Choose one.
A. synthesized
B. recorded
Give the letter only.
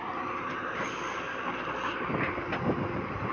B